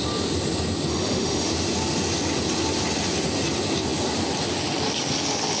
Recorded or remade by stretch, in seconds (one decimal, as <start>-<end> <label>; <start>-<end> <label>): 0.0-0.9 recorded; 0.9-1.5 remade; 1.5-5.6 recorded